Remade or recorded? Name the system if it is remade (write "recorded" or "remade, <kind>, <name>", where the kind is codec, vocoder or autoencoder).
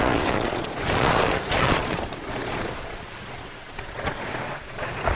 remade, vocoder, Vocos